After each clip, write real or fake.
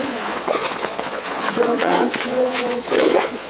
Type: fake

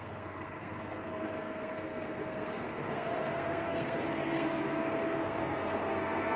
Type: fake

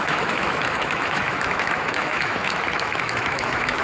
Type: fake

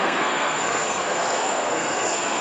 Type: fake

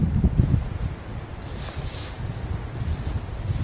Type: real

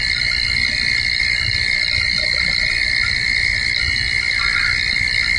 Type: real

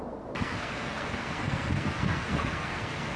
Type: fake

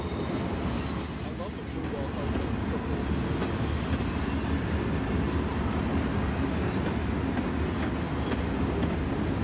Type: real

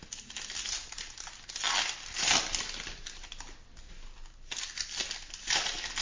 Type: real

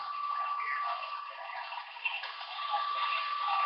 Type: real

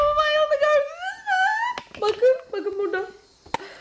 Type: real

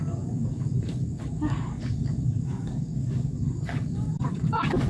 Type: fake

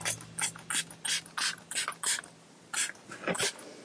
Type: real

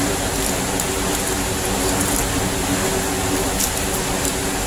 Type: real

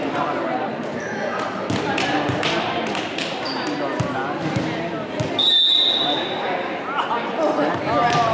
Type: real